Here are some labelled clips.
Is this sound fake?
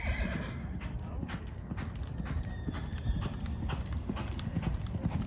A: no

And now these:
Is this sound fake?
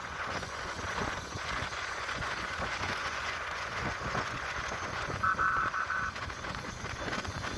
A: yes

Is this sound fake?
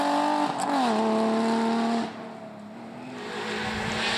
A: no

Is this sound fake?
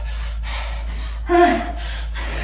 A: no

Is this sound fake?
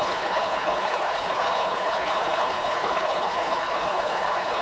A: yes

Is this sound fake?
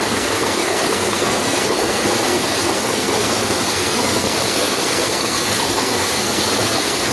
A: yes